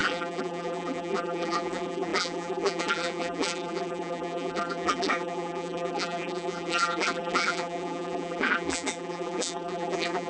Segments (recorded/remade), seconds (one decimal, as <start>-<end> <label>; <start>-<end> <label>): 0.0-10.3 remade